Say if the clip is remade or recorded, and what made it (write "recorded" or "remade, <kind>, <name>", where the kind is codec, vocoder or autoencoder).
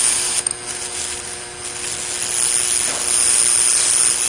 recorded